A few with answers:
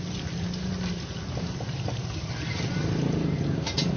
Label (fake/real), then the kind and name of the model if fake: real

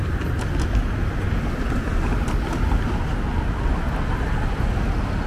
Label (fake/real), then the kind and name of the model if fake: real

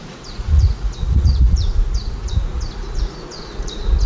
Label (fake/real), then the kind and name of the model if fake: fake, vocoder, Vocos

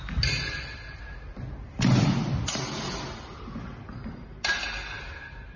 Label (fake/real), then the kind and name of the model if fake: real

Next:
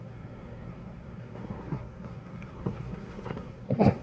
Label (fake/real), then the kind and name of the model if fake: fake, codec, SNAC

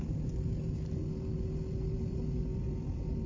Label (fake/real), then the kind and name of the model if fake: real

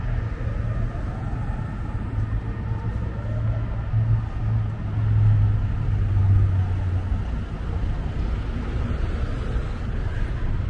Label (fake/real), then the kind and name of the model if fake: real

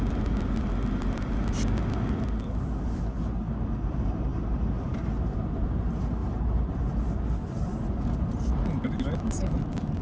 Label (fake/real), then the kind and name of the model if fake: real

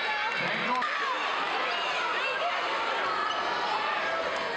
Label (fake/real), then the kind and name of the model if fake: real